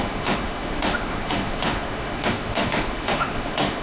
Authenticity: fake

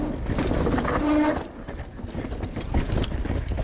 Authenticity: real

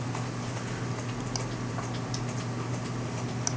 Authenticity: real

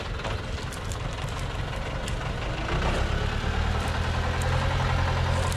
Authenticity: real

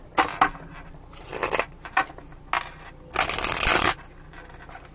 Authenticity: real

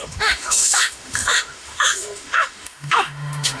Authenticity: fake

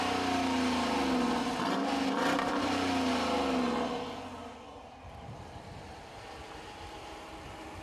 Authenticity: real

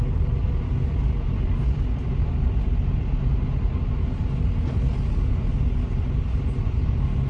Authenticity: real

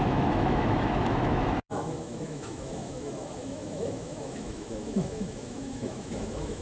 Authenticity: fake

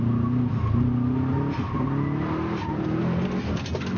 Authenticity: real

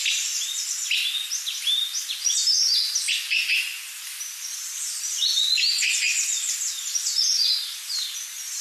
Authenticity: real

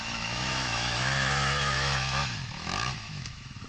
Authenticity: fake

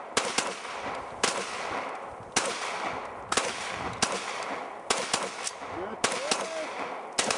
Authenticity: real